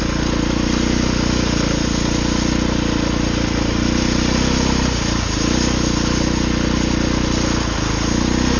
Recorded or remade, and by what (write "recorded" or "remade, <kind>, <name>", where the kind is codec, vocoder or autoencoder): recorded